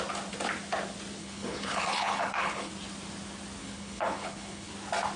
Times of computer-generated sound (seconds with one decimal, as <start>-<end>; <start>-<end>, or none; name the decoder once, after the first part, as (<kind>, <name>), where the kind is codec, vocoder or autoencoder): 1.2-2.7 (codec, HILCodec); 3.6-4.7